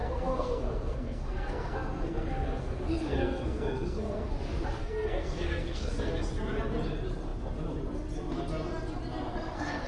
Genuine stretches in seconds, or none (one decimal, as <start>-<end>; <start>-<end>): 4.3-4.8; 6.1-9.3